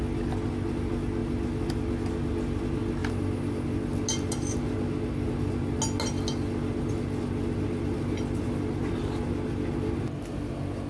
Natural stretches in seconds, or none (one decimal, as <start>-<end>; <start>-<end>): 0.0-10.9